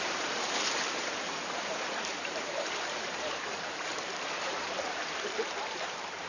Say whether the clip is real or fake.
fake